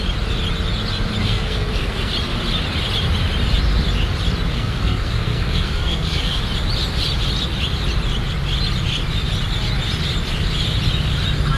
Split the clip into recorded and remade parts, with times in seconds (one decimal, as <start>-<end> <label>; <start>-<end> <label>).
0.0-1.2 recorded; 1.2-2.1 remade; 2.1-4.5 recorded; 4.5-6.4 remade; 6.4-11.6 recorded